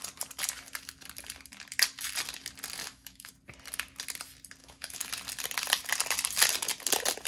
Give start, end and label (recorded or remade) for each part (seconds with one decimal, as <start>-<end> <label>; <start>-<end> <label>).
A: 0.0-2.8 recorded; 2.8-3.3 remade; 3.3-4.6 recorded; 4.6-5.1 remade; 5.1-7.3 recorded